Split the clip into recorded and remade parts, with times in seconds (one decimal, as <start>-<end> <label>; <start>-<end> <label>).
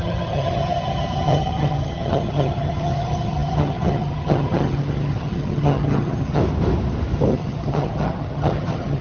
0.0-6.4 remade; 6.4-7.3 recorded; 7.3-9.0 remade